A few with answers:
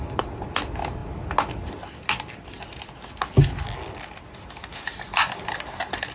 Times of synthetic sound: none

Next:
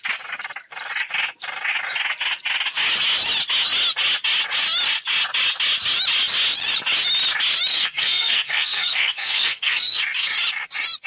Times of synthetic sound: 7.7-10.0

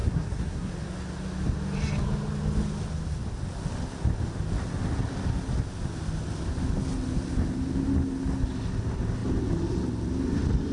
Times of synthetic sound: 0.0-0.7